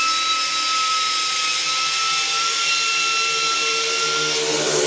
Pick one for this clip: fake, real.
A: real